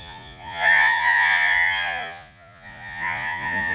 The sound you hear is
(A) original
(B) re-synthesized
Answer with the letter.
B